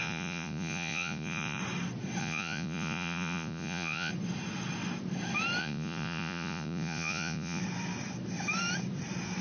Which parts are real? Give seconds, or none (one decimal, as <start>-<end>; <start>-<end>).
1.6-2.2; 4.1-5.6; 7.6-9.4

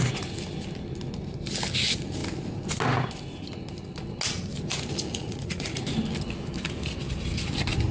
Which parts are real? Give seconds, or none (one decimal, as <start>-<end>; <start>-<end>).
0.0-5.1; 5.8-7.9

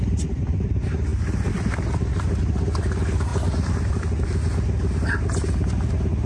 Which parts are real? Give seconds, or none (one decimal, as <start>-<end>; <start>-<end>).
0.0-6.3